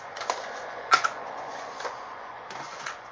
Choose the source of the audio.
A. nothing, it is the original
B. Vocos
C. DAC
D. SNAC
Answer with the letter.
B